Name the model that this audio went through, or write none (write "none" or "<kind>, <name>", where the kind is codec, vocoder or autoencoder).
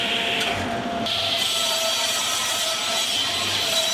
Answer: vocoder, BigVGAN v2